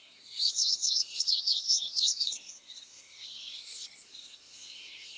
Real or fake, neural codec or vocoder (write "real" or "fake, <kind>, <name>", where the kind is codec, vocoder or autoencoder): fake, codec, SNAC